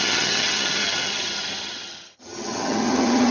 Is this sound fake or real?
fake